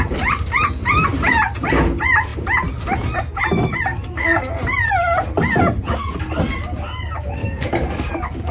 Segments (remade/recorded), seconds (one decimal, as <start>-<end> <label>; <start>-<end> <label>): 0.0-3.9 recorded; 3.9-4.5 remade; 4.5-7.4 recorded; 7.4-8.5 remade